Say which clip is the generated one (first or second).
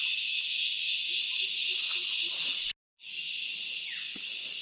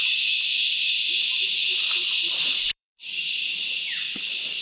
second